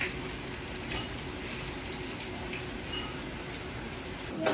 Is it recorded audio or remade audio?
recorded